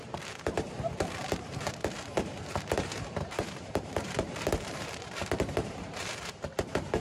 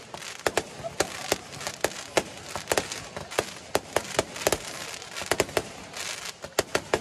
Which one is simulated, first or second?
first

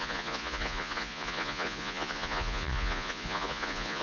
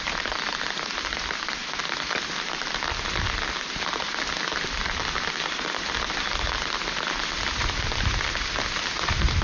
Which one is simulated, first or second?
first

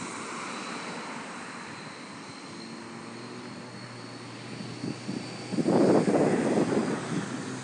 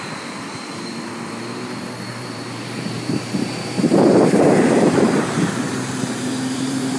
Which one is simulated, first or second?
second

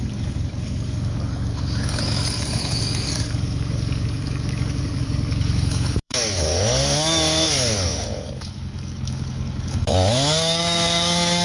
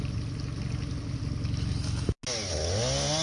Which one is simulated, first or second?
first